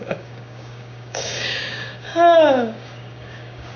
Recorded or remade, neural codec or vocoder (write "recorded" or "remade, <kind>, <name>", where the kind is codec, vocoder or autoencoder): remade, codec, DAC